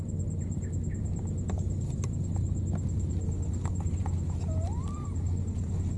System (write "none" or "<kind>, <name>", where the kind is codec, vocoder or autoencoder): vocoder, BigVGAN v2